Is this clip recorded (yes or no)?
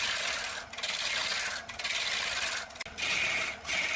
yes